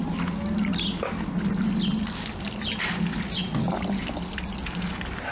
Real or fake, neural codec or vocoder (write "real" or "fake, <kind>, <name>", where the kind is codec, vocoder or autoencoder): real